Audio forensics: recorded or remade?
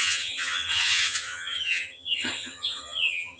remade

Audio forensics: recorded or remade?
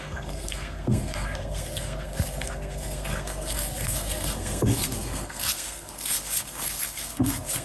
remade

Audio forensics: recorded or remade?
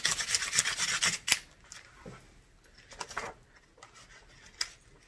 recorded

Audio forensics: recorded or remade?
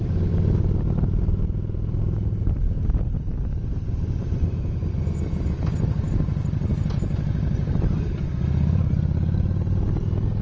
recorded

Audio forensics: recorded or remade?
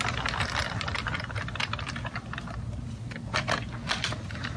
recorded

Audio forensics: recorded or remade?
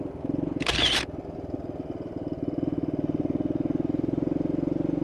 recorded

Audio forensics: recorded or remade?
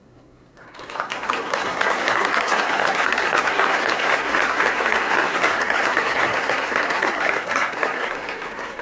remade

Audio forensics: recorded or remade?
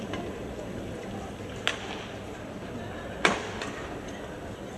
recorded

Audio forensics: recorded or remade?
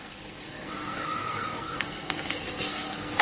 remade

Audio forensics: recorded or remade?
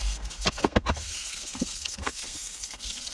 remade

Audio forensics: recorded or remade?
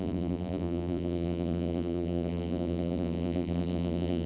remade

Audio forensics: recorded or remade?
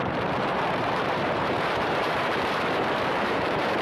remade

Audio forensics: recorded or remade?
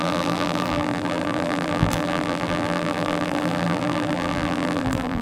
remade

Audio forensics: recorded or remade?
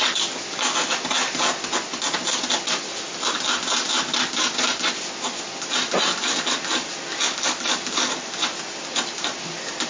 recorded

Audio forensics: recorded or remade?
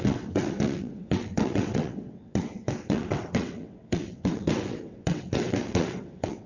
remade